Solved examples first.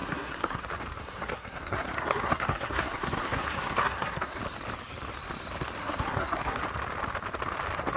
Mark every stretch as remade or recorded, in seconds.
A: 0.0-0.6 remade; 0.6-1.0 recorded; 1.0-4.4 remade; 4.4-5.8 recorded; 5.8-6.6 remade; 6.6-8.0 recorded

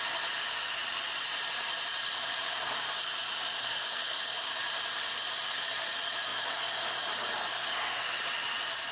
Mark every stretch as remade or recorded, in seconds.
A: 0.0-3.6 recorded; 3.6-4.2 remade; 4.2-7.4 recorded; 7.4-8.2 remade; 8.2-8.9 recorded

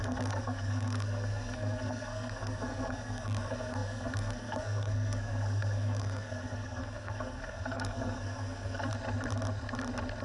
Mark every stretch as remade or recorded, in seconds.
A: 0.0-8.9 remade; 8.9-10.2 recorded

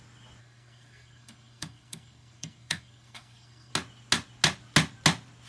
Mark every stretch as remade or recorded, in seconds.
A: 0.0-0.4 recorded; 0.4-3.7 remade; 3.7-5.5 recorded

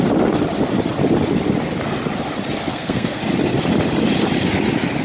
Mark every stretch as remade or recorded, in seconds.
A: 0.0-2.7 recorded; 2.7-3.2 remade; 3.2-5.0 recorded

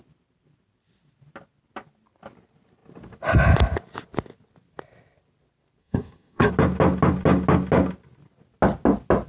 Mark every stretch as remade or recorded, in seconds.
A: 0.0-5.8 recorded; 5.8-6.5 remade; 6.5-9.3 recorded

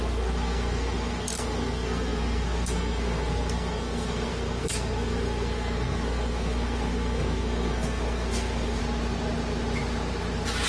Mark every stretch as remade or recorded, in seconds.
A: 0.0-8.8 remade; 8.8-10.7 recorded